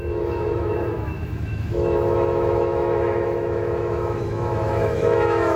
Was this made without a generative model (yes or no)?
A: no